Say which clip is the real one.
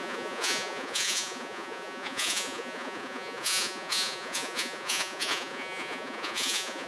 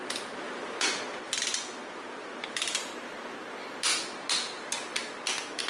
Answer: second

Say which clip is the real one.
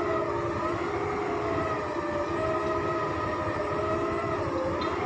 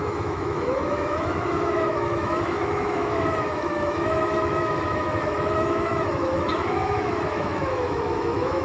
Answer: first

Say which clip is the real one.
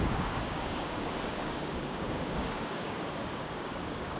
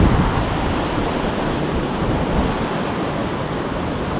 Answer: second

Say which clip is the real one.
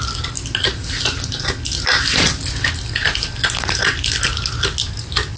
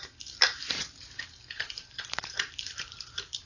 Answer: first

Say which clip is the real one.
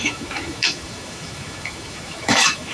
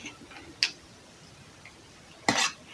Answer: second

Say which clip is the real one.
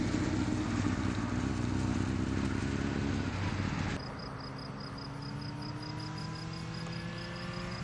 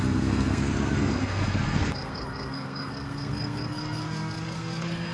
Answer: first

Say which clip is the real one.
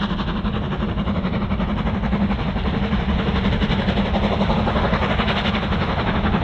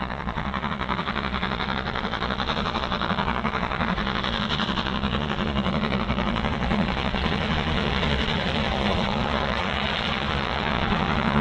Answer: first